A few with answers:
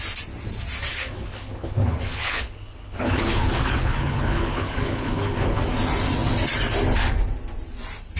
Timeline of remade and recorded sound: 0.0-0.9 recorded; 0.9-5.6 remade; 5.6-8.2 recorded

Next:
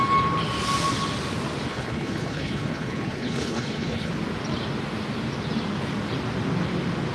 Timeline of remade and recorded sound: 0.0-1.7 recorded; 1.7-4.1 remade; 4.1-7.1 recorded

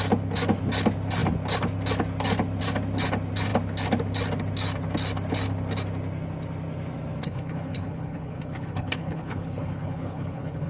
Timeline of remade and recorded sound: 0.0-7.2 recorded; 7.2-10.7 remade

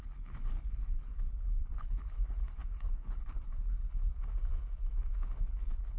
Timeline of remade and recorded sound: 0.0-4.1 remade; 4.1-5.4 recorded; 5.4-6.0 remade

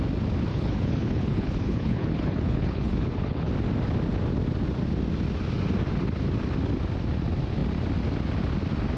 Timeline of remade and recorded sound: 0.0-0.5 recorded; 0.5-3.5 remade; 3.5-9.0 recorded

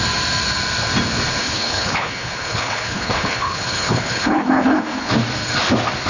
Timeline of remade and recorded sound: 0.0-1.4 recorded; 1.4-5.1 remade; 5.1-6.1 recorded

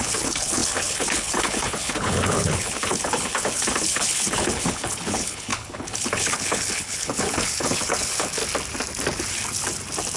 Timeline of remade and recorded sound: 0.0-8.4 remade; 8.4-10.2 recorded